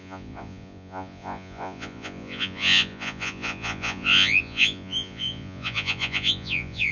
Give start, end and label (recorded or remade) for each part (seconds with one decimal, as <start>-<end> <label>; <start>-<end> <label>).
0.0-6.9 remade